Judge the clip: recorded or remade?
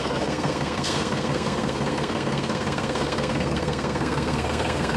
remade